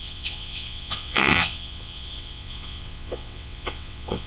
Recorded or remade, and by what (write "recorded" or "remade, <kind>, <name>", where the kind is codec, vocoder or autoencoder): remade, vocoder, WaveNeXt